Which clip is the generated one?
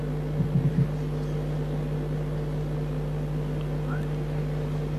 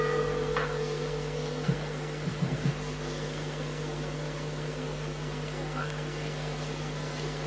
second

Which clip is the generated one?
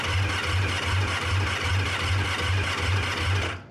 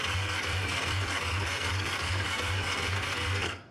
second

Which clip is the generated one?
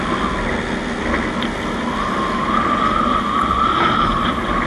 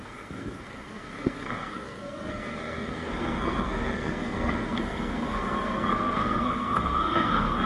second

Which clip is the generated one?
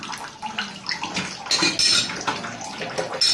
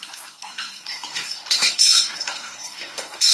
second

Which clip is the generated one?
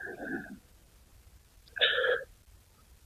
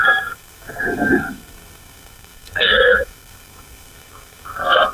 second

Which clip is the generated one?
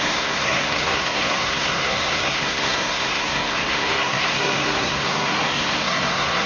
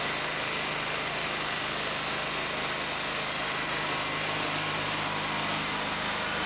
first